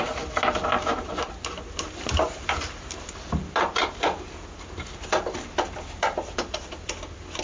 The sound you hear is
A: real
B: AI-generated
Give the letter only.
B